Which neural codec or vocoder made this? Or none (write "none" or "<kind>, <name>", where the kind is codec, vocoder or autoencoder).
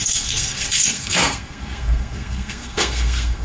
codec, SNAC